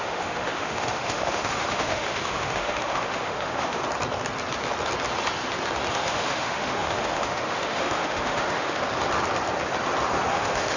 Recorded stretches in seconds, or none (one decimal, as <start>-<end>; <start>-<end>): 3.8-5.9; 8.8-10.3